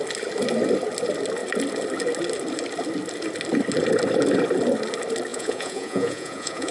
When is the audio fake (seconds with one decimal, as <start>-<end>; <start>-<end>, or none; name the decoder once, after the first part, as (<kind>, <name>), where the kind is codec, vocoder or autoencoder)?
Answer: 5.3-6.7 (vocoder, Vocos)

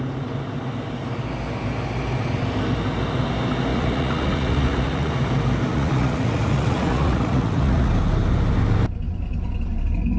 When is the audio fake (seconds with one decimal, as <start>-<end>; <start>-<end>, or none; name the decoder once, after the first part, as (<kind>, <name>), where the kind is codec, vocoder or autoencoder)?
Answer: 3.7-5.1 (vocoder, Vocos); 5.7-7.9

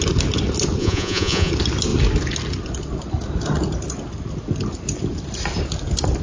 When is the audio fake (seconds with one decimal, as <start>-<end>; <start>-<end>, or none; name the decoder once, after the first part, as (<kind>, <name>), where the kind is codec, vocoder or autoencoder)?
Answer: 0.8-1.5 (vocoder, Vocos)

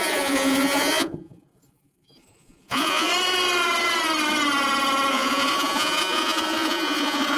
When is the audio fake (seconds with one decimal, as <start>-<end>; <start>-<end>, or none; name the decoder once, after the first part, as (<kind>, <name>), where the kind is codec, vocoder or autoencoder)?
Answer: 0.0-3.1 (vocoder, Vocos); 5.1-7.4

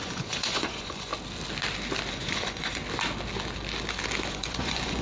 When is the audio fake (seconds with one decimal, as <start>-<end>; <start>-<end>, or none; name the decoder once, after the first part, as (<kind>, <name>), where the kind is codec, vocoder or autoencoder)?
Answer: 0.0-1.1 (vocoder, Vocos); 2.1-2.8; 4.3-5.0

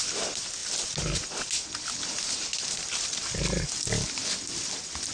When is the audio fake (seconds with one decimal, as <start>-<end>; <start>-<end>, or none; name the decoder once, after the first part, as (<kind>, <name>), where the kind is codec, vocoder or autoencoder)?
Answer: none

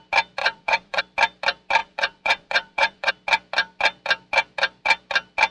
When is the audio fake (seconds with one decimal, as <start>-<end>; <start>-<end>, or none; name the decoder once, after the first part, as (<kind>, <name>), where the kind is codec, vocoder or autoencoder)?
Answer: 0.4-1.0 (vocoder, Vocos); 1.8-3.1